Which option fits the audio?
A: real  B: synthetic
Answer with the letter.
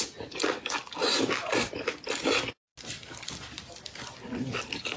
A